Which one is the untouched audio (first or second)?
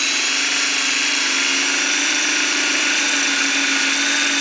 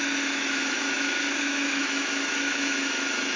first